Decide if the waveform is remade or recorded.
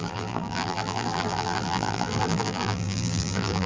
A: remade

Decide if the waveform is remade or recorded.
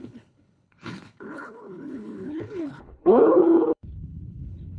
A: remade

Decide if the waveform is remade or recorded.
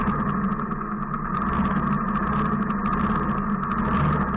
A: recorded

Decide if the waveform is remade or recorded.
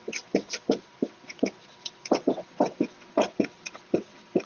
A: remade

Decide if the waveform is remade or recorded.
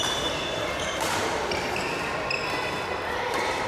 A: remade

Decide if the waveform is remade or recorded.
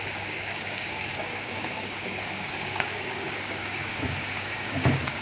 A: remade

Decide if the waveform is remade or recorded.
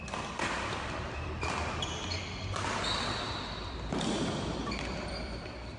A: remade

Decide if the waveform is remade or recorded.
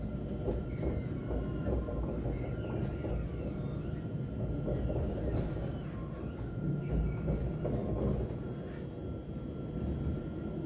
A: recorded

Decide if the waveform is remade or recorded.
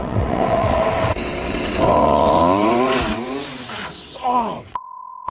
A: remade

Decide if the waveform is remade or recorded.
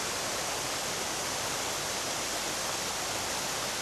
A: recorded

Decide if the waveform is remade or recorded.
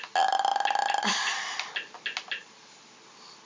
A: recorded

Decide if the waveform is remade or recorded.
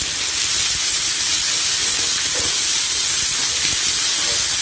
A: recorded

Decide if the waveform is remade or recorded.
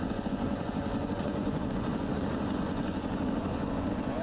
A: remade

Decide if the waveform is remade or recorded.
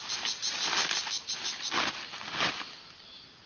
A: recorded